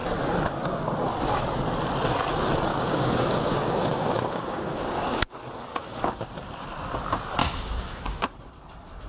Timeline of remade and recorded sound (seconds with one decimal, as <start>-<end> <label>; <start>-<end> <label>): 0.0-2.7 recorded; 2.7-5.3 remade; 5.3-5.7 recorded; 5.7-6.3 remade; 6.3-7.4 recorded; 7.4-8.3 remade; 8.3-9.1 recorded